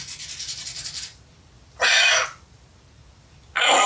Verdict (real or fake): real